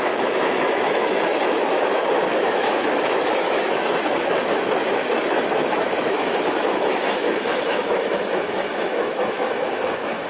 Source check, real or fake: fake